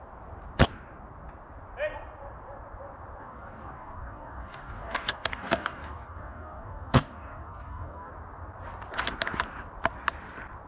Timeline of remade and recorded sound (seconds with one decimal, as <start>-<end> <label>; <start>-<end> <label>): 0.0-3.2 recorded; 3.2-8.1 remade; 8.1-10.7 recorded